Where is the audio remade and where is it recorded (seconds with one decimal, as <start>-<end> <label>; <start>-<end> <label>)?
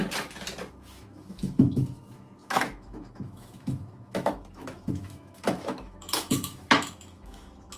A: 0.0-0.7 recorded; 0.7-7.8 remade